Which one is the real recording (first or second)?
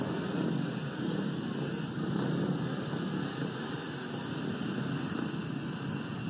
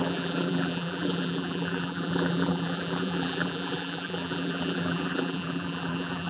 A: first